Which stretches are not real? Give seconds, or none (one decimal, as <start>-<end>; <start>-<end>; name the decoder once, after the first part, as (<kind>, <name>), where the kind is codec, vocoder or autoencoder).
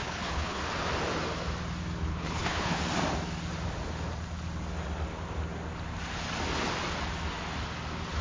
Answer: 0.0-0.6 (codec, HILCodec); 2.1-2.8